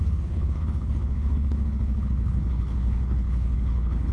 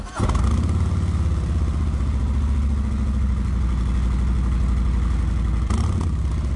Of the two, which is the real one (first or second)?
second